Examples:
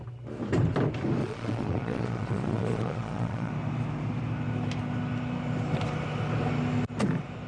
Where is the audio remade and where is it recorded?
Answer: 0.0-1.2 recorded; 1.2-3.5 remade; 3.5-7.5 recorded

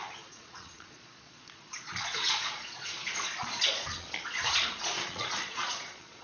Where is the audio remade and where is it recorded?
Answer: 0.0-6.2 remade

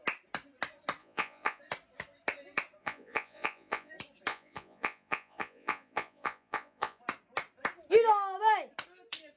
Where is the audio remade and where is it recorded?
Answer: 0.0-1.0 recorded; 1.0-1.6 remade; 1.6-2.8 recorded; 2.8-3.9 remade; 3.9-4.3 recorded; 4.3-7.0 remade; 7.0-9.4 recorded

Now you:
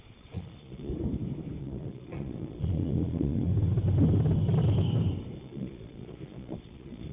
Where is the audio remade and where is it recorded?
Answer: 0.0-0.9 remade; 0.9-1.6 recorded; 1.6-3.5 remade; 3.5-5.4 recorded; 5.4-7.1 remade